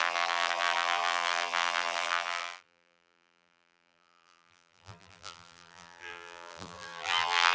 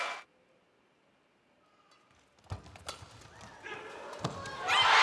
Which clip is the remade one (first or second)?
first